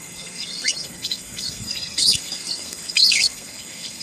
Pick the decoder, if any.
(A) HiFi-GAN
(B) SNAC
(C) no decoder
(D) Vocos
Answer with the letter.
B